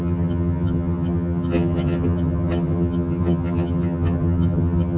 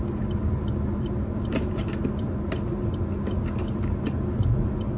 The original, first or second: second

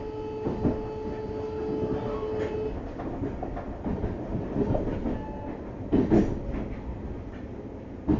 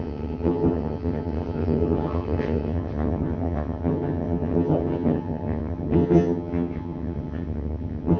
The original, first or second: first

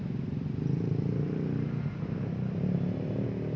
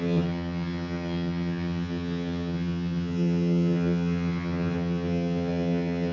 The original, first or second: first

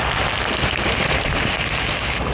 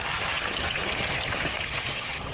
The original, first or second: first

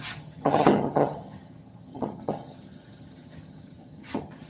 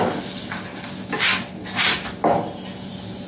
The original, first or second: second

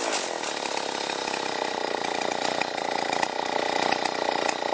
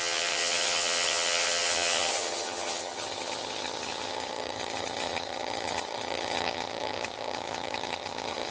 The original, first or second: first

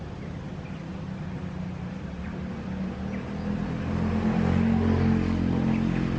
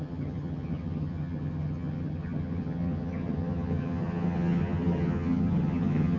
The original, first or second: first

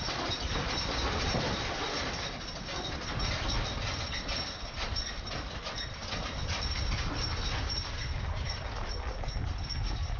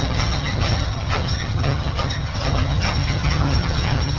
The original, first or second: first